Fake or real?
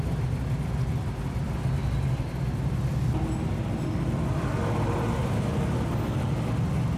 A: real